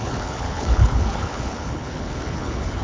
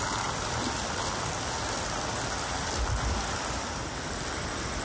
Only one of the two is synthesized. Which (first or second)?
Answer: first